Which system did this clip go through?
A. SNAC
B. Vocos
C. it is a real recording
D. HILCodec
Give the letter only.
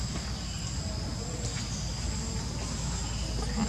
C